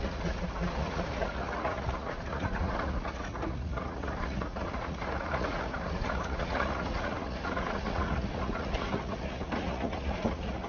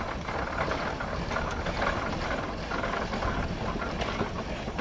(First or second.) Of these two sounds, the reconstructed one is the first